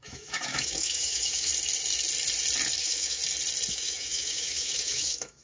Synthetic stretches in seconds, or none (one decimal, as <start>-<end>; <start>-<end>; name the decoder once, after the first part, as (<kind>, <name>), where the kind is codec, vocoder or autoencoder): 0.0-1.5 (autoencoder, DAC-VAE); 2.8-3.2; 3.7-5.4